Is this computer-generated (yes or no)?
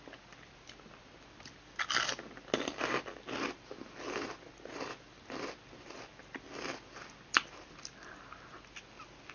no